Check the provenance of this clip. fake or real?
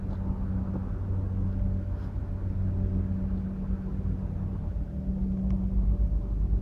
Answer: real